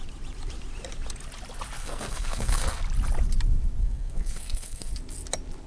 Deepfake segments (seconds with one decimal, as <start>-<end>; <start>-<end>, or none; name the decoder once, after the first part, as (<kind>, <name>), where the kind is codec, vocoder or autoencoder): 1.8-2.8 (codec, SNAC); 3.8-4.9